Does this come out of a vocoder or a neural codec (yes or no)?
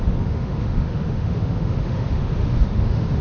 yes